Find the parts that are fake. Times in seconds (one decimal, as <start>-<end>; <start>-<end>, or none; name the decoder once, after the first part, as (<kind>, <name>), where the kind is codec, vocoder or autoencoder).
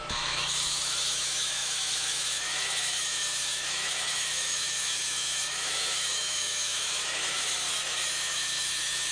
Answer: 0.0-9.1 (autoencoder, DAC-VAE)